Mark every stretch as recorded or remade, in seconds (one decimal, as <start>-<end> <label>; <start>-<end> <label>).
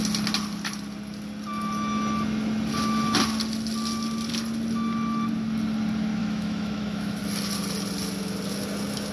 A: 0.0-6.2 recorded; 6.2-7.2 remade; 7.2-9.1 recorded